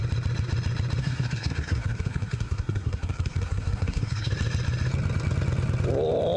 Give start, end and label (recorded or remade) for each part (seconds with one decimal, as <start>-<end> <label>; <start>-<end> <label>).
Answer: 0.0-1.0 recorded; 1.0-4.3 remade; 4.3-6.4 recorded